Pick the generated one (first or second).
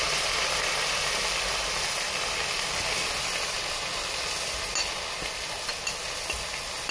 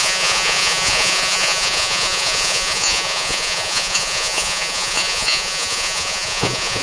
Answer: second